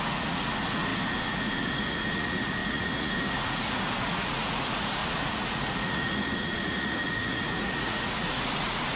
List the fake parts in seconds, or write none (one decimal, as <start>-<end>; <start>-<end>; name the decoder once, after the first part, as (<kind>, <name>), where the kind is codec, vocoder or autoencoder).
0.0-9.0 (vocoder, Vocos)